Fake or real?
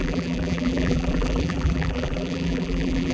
fake